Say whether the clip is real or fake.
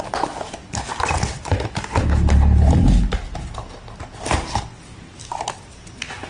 real